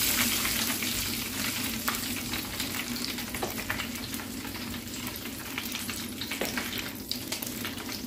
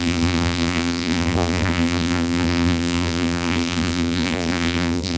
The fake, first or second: second